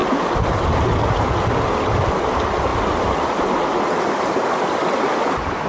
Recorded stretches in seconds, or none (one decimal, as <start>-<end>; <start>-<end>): 0.0-5.7